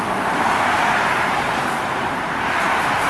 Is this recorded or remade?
remade